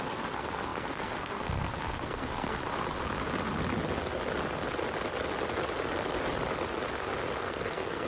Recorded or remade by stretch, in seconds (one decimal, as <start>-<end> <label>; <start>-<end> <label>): 0.0-2.6 remade; 2.6-7.4 recorded; 7.4-8.1 remade